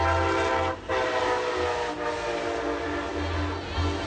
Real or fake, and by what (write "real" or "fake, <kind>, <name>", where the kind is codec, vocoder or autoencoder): real